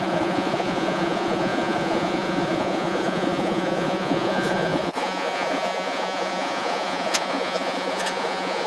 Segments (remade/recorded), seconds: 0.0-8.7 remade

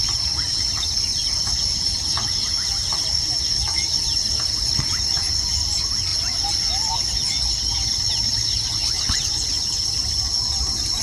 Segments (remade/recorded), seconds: 0.0-11.0 recorded